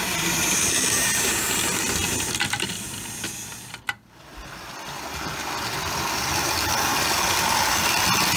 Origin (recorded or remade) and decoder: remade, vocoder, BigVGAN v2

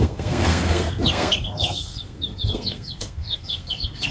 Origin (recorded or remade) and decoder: remade, codec, SNAC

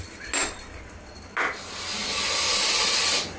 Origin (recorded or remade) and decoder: recorded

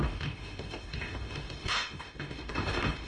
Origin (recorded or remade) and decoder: remade, autoencoder, DAC-VAE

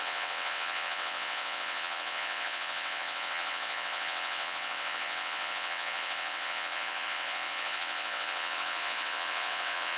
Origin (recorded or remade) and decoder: remade, vocoder, WaveNeXt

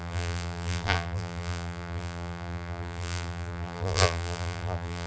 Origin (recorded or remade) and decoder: remade, vocoder, BigVGAN v2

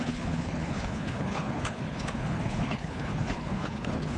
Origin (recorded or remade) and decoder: remade, codec, HILCodec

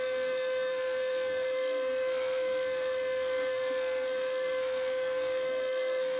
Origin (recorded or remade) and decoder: remade, codec, SNAC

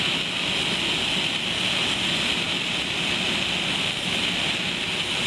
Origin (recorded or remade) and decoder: recorded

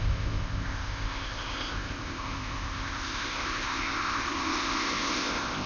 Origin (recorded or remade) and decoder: remade, codec, ZipCodec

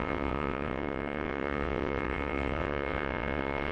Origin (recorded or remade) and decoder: remade, vocoder, WaveNeXt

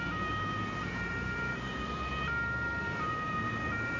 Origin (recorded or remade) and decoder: remade, vocoder, BigVGAN v2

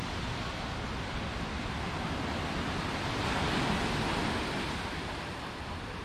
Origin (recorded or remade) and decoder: recorded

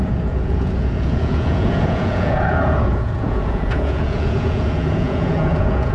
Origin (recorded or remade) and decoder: remade, vocoder, Vocos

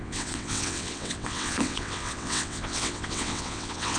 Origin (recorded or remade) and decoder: remade, vocoder, WaveNeXt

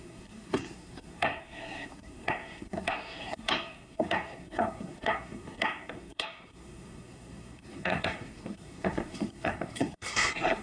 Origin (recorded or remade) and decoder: remade, codec, SNAC